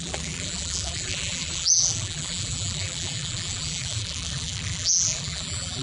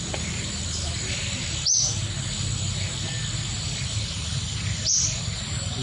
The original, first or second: second